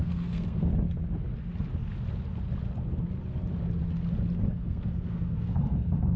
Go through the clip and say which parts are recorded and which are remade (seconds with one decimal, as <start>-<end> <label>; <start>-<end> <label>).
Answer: 0.0-0.7 remade; 0.7-4.4 recorded; 4.4-6.2 remade